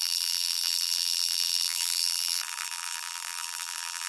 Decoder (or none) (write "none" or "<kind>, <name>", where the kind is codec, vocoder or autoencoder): vocoder, BigVGAN v2